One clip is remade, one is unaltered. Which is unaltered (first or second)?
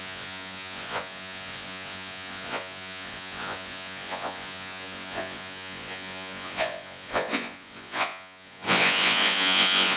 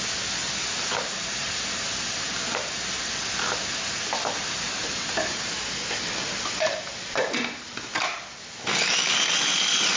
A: second